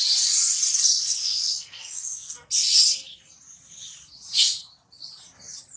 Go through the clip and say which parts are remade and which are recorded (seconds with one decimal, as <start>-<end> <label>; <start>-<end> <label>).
0.0-1.2 recorded; 1.2-2.5 remade; 2.5-5.8 recorded